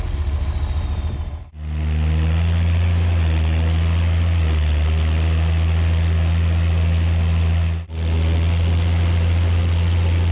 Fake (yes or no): no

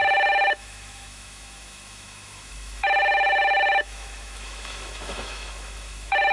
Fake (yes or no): yes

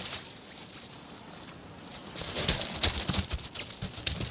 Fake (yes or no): no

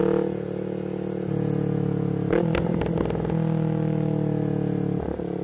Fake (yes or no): no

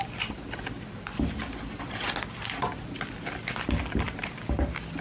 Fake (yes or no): no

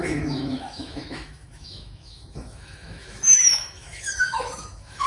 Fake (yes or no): yes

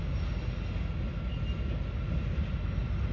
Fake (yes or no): no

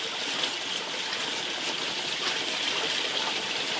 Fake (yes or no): no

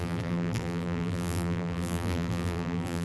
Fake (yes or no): yes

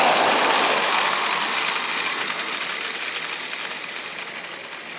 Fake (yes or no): no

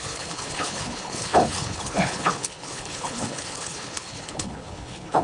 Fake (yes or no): yes